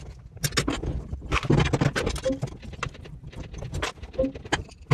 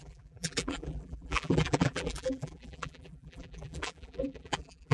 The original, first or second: first